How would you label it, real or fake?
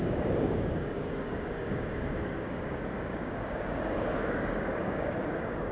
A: fake